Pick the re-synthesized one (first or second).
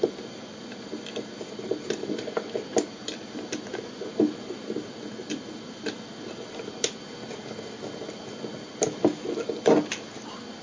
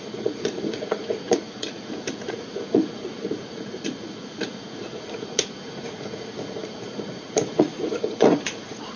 second